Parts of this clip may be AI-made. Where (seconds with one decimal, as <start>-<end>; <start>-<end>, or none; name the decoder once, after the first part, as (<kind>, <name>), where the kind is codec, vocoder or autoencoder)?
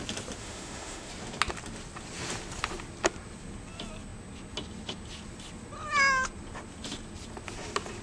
0.4-1.1 (autoencoder, DAC-VAE)